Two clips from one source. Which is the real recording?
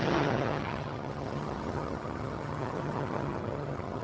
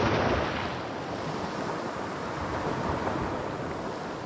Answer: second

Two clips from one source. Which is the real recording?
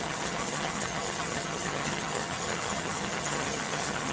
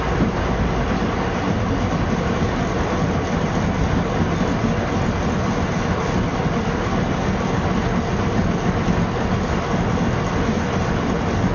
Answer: second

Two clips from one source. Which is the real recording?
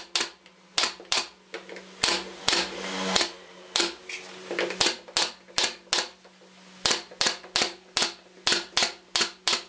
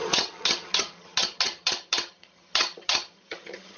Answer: first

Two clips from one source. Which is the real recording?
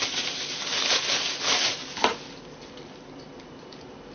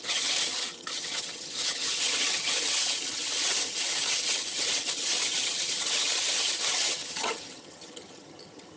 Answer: first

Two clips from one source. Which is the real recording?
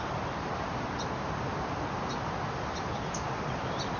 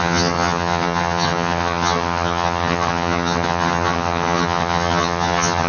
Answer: first